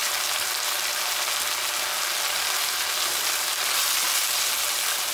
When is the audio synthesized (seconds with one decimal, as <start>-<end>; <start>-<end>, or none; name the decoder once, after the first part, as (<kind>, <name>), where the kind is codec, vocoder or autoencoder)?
none